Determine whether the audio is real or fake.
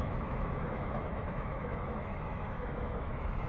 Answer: fake